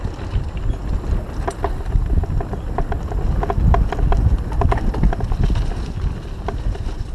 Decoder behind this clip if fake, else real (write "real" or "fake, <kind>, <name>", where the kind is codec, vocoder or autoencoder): real